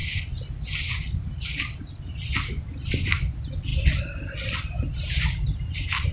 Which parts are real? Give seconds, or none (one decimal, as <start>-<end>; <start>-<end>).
0.0-6.1